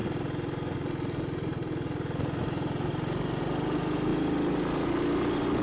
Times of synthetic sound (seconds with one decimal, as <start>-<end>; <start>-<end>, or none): none